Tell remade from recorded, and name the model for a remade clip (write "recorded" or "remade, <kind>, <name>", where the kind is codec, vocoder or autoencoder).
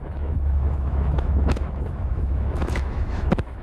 remade, autoencoder, DAC-VAE